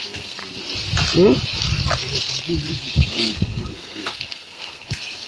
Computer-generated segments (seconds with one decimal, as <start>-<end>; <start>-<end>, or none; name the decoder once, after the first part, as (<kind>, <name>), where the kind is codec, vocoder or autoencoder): 0.0-0.4 (codec, SNAC); 2.7-5.3